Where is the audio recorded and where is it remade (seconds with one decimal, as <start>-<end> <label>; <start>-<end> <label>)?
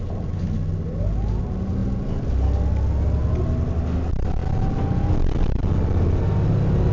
0.0-6.9 recorded